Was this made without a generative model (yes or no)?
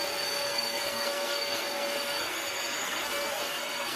no